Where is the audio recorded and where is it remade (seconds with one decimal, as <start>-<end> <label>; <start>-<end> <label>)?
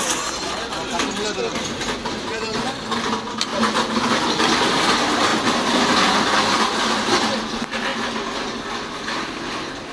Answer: 0.0-2.0 recorded; 2.0-3.1 remade; 3.1-9.9 recorded